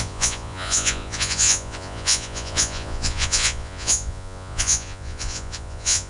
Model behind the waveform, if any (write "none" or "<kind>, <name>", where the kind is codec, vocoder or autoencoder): vocoder, Vocos